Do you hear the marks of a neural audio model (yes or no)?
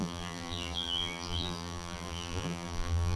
yes